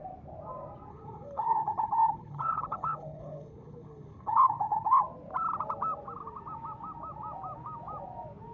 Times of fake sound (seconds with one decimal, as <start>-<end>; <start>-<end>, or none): 0.9-5.0